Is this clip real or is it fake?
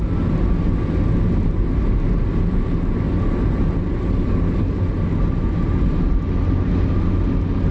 real